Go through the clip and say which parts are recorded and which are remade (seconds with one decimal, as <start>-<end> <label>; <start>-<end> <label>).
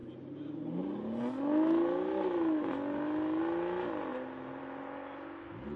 0.0-5.8 recorded